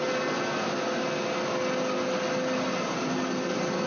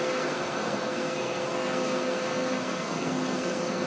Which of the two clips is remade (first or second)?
second